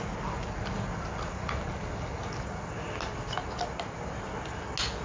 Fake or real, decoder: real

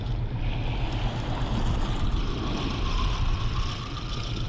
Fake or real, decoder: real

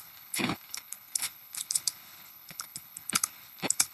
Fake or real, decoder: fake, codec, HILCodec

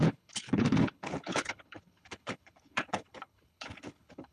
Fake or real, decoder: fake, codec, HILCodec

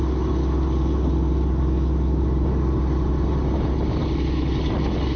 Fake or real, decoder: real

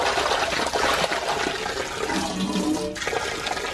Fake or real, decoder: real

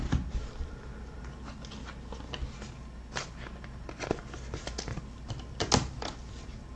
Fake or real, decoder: real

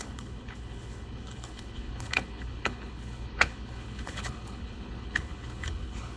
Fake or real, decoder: fake, codec, HILCodec